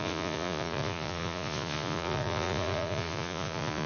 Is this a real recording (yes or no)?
no